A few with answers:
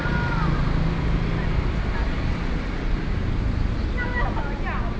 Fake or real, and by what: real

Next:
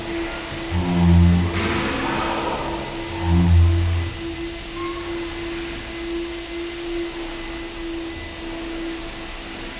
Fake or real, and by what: real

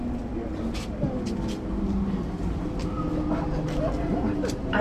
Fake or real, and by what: real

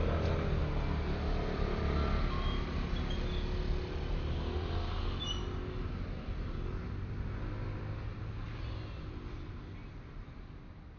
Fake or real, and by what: real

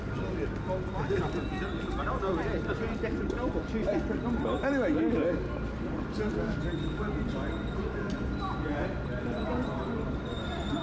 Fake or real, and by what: real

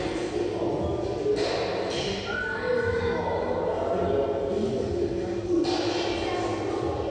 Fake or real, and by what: real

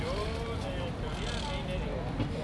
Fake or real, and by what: real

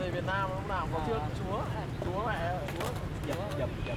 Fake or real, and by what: real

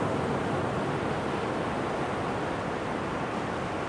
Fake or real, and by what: real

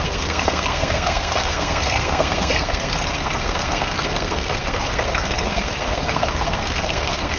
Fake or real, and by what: fake, codec, SNAC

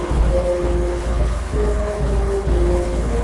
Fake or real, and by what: fake, codec, HILCodec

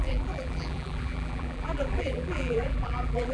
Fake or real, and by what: fake, vocoder, BigVGAN v2